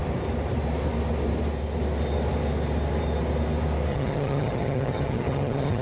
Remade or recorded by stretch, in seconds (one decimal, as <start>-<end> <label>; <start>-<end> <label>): 0.0-3.9 recorded; 3.9-5.8 remade